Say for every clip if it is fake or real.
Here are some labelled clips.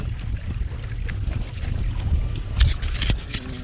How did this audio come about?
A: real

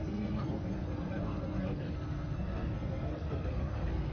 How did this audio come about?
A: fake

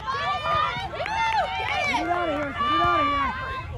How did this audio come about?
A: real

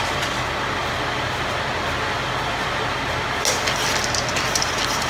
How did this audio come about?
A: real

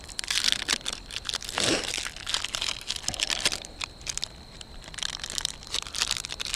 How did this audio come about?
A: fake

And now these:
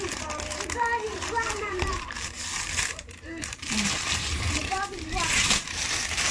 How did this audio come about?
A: fake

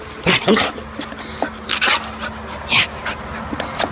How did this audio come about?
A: real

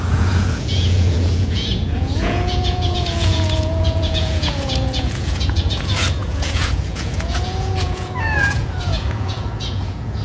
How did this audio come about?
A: fake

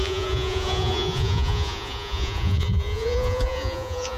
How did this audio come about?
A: fake